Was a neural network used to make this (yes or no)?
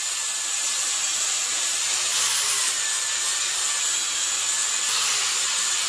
no